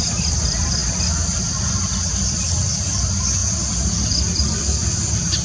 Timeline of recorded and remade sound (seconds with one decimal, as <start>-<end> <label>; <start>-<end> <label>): 0.0-5.4 recorded